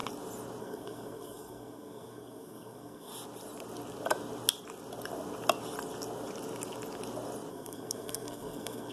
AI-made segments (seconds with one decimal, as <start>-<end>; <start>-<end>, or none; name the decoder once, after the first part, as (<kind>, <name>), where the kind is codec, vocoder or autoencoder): 0.6-3.1 (codec, SNAC); 7.5-8.9